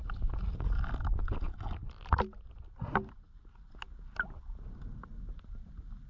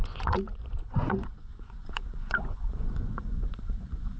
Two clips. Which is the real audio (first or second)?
first